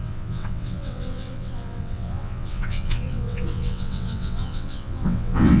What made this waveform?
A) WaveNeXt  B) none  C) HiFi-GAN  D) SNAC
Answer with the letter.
A